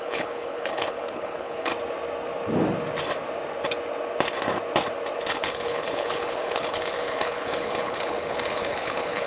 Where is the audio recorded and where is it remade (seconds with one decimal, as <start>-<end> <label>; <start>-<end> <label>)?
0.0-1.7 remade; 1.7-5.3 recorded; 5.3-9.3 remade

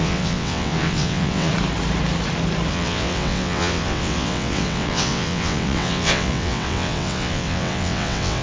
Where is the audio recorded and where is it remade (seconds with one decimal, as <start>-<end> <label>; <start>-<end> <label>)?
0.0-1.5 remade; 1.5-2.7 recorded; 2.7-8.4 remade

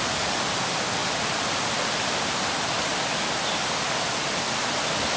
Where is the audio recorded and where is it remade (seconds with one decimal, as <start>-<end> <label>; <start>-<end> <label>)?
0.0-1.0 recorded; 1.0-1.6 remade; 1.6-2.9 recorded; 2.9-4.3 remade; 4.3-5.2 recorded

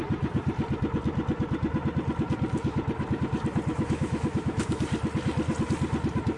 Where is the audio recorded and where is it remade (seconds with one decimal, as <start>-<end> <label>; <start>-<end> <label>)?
0.0-3.7 recorded; 3.7-4.8 remade; 4.8-6.4 recorded

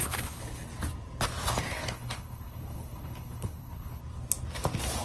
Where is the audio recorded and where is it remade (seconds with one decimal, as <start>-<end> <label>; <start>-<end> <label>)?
0.0-0.7 remade; 0.7-1.7 recorded; 1.7-4.0 remade; 4.0-5.0 recorded

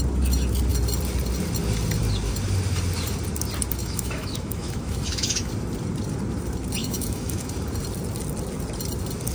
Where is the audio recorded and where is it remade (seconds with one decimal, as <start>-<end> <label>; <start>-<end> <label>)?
0.0-3.8 recorded; 3.8-5.5 remade; 5.5-6.8 recorded; 6.8-7.5 remade; 7.5-9.3 recorded

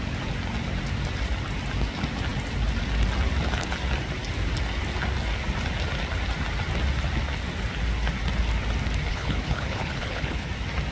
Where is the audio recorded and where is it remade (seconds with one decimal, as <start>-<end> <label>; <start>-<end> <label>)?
0.0-9.1 recorded; 9.1-10.5 remade; 10.5-10.9 recorded

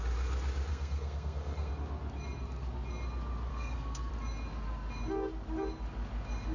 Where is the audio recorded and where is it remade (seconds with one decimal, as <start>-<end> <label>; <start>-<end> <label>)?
0.0-0.7 recorded; 0.7-1.7 remade; 1.7-3.5 recorded; 3.5-4.1 remade; 4.1-6.5 recorded